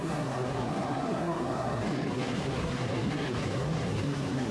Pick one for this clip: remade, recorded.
remade